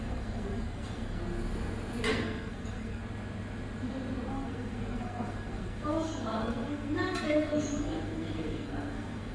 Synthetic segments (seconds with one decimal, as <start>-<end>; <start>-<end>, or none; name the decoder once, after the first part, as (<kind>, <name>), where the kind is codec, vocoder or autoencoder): 0.0-1.2 (codec, SNAC); 2.1-3.0; 4.3-9.3